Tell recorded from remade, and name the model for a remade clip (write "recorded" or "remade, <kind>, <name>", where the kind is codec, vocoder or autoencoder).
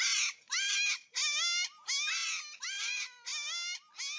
recorded